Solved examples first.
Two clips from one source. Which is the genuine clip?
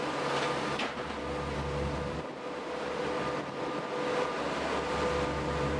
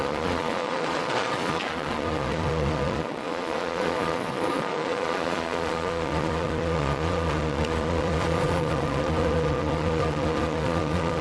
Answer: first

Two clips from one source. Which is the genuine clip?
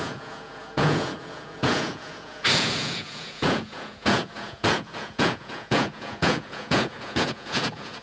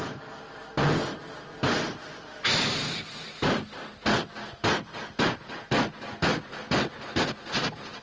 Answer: second